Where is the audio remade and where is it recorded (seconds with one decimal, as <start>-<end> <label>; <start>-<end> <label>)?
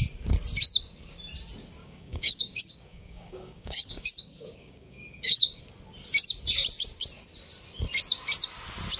0.0-1.8 recorded; 1.8-5.6 remade; 5.6-9.0 recorded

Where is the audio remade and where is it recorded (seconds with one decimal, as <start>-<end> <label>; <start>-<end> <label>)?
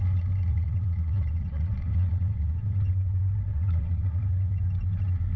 0.0-0.5 recorded; 0.5-2.9 remade; 2.9-3.5 recorded; 3.5-4.3 remade; 4.3-5.4 recorded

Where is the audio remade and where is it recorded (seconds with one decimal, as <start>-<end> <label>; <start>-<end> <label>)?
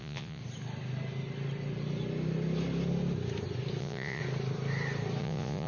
0.0-0.4 remade; 0.4-3.8 recorded; 3.8-4.2 remade; 4.2-5.2 recorded; 5.2-5.7 remade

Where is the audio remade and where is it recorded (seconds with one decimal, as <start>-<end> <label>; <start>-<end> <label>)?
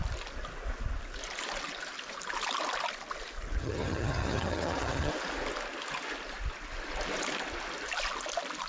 0.0-3.6 recorded; 3.6-5.1 remade; 5.1-8.7 recorded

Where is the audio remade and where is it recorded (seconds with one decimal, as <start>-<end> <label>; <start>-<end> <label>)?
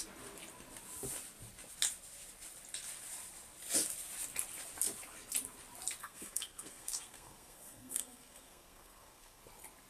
0.0-6.0 recorded; 6.0-9.4 remade; 9.4-9.9 recorded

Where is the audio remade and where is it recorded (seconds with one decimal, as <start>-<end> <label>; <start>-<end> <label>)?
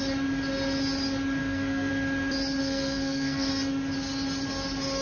0.0-1.4 recorded; 1.4-1.9 remade; 1.9-2.6 recorded; 2.6-3.5 remade; 3.5-5.0 recorded